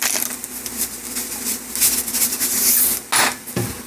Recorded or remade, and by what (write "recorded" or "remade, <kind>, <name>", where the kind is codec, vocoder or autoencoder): recorded